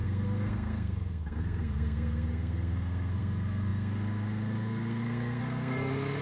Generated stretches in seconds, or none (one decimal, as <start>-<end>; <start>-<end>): 0.0-6.2